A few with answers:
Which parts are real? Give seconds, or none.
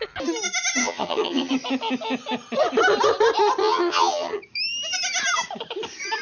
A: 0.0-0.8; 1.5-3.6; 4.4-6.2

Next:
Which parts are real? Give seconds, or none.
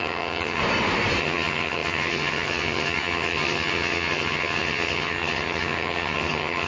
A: 0.6-1.2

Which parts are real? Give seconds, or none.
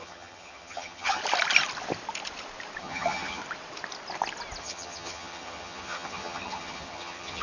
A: 1.2-2.8; 3.4-4.6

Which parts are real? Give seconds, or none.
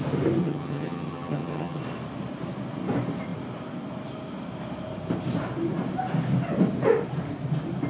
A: 0.0-0.4; 1.8-7.9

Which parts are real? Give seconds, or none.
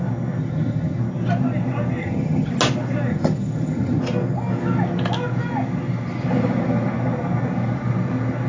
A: 0.0-0.4; 1.0-2.0; 2.5-3.1; 4.0-8.5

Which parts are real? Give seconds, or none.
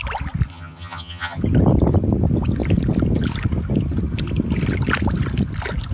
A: 0.0-0.5; 1.4-5.9